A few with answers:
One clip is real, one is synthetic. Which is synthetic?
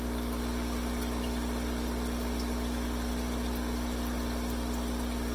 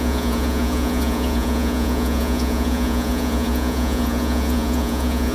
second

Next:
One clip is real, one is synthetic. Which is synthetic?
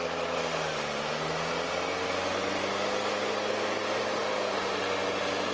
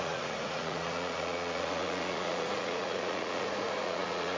second